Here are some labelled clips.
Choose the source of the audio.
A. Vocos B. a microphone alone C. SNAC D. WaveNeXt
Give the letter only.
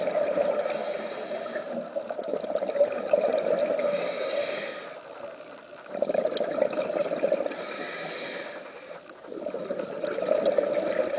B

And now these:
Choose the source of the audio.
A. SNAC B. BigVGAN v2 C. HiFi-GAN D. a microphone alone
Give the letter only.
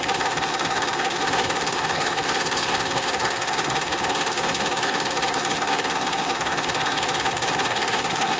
A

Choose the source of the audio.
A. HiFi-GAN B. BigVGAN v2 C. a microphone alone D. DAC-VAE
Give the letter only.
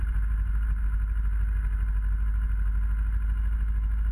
C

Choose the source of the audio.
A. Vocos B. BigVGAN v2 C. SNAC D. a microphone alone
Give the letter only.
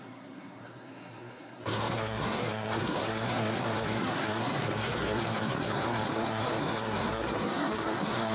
C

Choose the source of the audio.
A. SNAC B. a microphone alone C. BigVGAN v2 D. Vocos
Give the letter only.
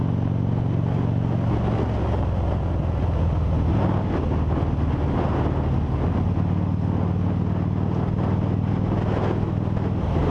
B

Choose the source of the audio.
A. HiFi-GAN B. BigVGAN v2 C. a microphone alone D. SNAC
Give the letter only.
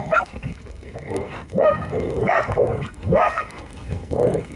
D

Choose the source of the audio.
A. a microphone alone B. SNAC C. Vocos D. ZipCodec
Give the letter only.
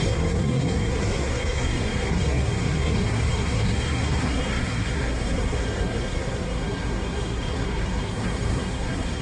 B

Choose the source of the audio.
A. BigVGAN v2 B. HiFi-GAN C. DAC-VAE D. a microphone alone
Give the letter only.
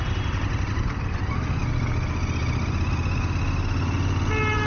D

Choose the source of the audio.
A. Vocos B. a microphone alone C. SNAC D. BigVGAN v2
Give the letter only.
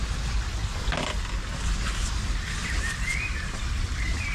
B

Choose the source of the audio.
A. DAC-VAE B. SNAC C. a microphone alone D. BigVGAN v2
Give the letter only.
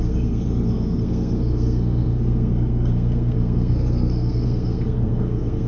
B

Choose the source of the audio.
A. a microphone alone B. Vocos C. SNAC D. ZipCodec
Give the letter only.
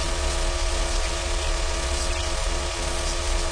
B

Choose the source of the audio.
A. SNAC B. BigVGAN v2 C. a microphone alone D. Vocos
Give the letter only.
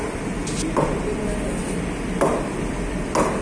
C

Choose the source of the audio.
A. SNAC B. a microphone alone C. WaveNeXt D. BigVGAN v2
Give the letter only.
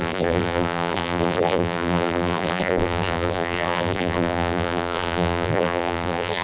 D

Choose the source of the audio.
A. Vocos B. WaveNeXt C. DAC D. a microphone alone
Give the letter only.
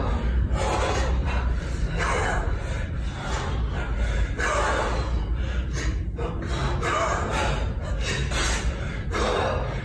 D